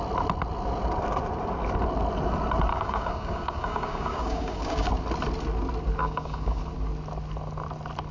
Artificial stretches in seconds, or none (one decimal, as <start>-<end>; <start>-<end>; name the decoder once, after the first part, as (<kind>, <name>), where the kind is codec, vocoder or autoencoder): 2.7-4.9 (codec, DAC); 6.0-6.6